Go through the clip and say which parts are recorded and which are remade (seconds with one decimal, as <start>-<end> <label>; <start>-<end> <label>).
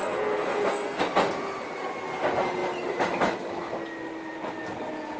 0.0-1.0 remade; 1.0-5.2 recorded